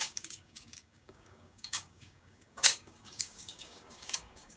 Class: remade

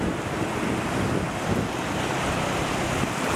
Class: recorded